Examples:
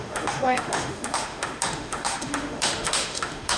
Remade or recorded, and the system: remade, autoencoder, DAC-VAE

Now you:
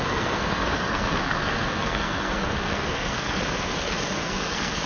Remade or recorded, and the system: remade, codec, SNAC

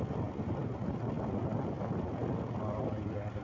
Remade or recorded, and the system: recorded